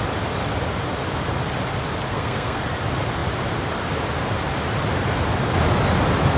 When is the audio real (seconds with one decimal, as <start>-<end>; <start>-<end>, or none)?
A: 0.0-2.1; 2.6-6.4